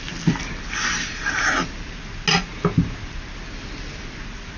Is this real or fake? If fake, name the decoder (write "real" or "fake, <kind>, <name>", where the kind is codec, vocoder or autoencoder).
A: real